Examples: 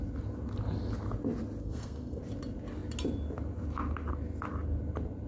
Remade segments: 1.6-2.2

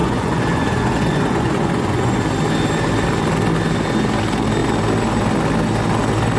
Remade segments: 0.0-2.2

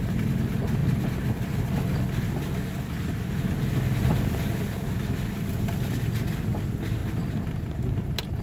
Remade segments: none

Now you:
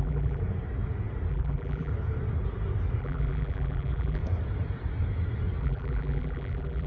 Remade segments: 0.0-0.4; 1.3-1.9; 3.0-4.2; 5.6-6.9